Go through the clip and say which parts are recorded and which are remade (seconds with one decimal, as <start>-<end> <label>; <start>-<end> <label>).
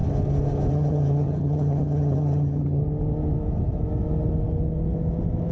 0.0-0.7 recorded; 0.7-2.8 remade; 2.8-5.5 recorded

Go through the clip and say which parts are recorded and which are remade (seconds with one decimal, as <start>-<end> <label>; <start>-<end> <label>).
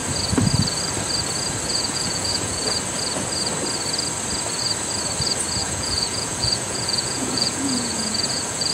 0.0-1.7 recorded; 1.7-2.6 remade; 2.6-5.6 recorded; 5.6-8.7 remade